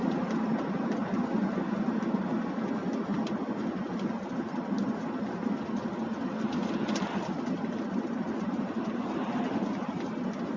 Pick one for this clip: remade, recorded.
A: recorded